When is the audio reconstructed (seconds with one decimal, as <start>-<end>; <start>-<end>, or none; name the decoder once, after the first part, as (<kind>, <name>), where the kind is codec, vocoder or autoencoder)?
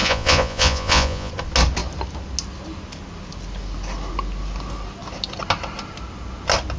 0.0-1.3 (vocoder, Vocos)